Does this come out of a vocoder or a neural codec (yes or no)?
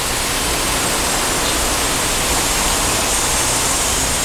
yes